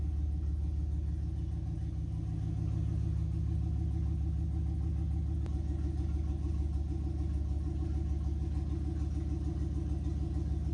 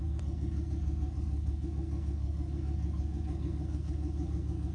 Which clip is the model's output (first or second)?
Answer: second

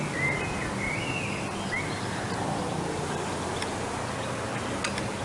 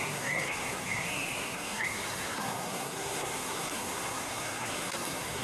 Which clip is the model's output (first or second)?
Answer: second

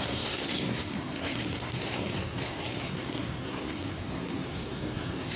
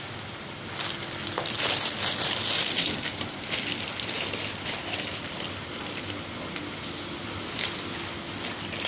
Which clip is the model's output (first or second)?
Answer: first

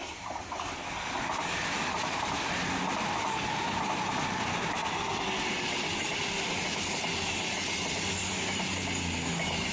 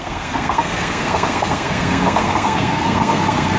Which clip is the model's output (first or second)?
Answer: second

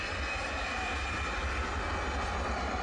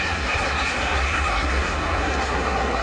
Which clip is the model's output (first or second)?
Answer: second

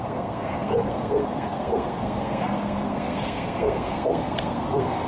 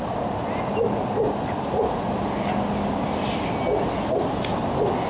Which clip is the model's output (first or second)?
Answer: first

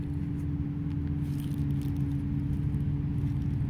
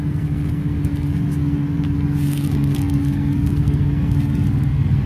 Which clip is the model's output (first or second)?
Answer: second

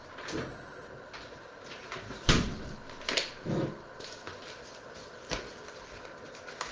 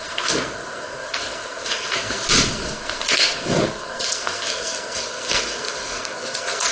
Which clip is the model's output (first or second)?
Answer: second